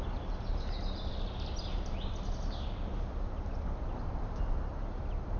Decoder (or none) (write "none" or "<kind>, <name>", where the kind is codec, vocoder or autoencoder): none